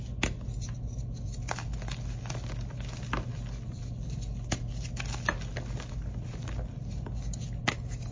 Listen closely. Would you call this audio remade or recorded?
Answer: recorded